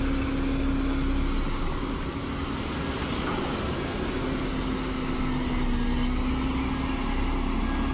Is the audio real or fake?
real